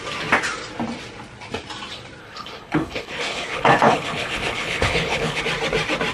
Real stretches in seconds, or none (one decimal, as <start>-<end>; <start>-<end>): 0.0-2.2; 5.4-6.1